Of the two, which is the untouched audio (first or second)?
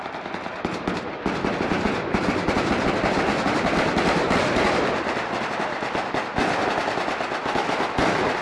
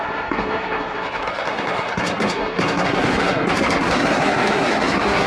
first